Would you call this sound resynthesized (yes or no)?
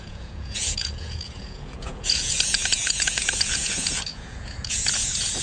yes